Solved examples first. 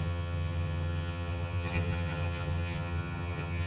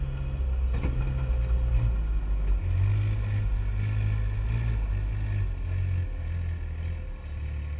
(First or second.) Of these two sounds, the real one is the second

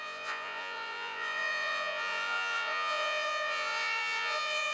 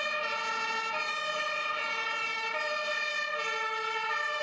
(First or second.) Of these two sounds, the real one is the second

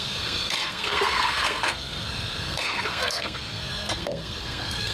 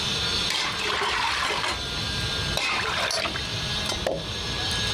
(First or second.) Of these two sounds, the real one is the second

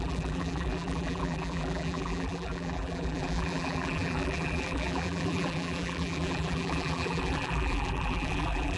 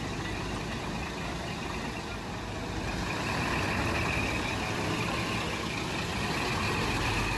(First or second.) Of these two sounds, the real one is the second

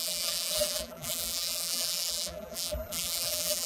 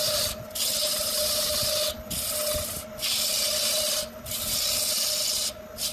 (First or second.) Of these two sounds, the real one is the second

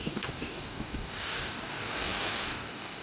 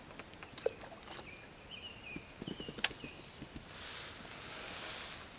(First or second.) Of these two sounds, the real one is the second